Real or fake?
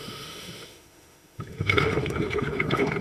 fake